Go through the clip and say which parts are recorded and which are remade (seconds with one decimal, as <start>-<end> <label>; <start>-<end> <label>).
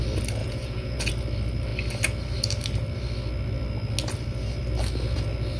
0.0-0.4 recorded; 0.4-1.1 remade; 1.1-5.6 recorded